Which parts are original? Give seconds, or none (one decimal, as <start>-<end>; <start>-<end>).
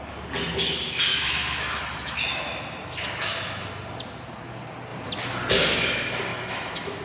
0.0-1.1; 3.7-6.3